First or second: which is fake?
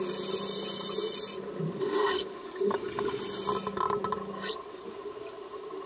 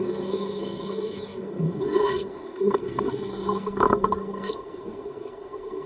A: second